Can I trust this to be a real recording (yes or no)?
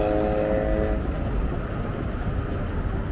yes